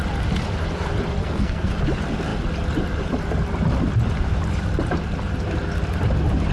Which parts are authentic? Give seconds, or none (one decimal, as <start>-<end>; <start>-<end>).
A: 0.0-1.2; 1.7-6.5